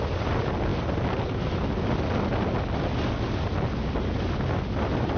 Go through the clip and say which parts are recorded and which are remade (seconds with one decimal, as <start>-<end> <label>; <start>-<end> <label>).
0.0-5.2 recorded